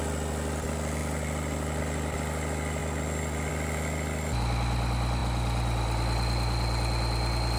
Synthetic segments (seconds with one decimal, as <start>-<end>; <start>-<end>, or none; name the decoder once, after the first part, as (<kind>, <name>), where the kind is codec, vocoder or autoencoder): none